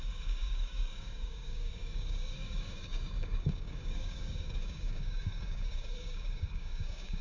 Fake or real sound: fake